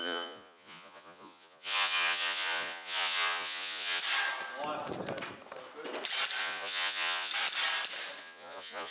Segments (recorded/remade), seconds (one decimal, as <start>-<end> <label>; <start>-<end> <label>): 0.0-4.0 remade; 4.0-6.4 recorded; 6.4-7.3 remade; 7.3-8.2 recorded; 8.2-8.9 remade